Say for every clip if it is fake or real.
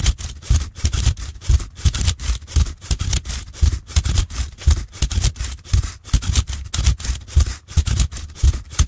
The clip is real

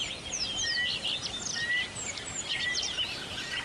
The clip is real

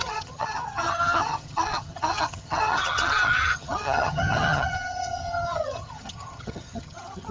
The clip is fake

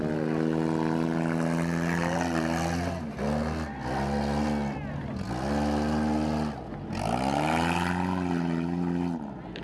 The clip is real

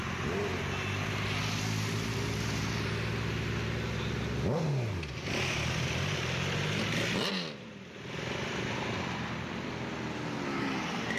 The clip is real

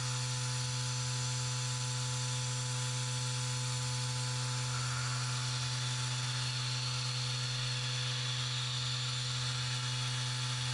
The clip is real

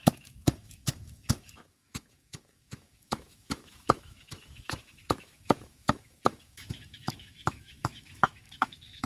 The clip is fake